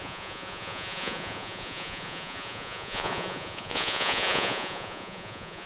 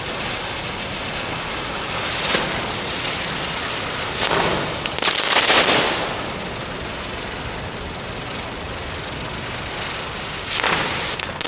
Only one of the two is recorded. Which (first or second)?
second